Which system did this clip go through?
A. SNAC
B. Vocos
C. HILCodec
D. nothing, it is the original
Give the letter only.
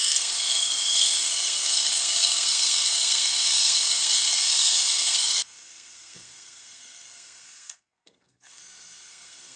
A